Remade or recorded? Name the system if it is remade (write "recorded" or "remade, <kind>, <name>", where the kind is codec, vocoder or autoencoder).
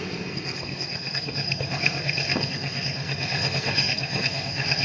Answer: remade, codec, SNAC